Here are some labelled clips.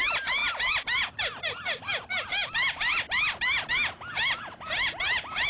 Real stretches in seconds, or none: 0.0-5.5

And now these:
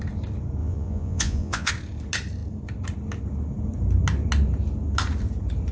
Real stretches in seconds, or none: 0.0-0.6; 1.7-5.7